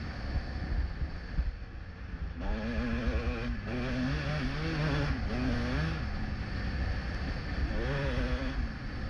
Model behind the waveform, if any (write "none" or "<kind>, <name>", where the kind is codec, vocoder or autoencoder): none